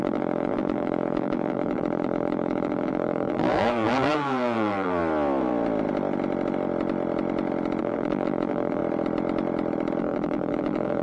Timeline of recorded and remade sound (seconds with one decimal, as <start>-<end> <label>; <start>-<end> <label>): 0.0-5.0 remade; 5.0-7.8 recorded; 7.8-8.8 remade; 8.8-10.0 recorded; 10.0-11.0 remade